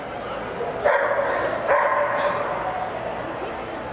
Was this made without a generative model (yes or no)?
yes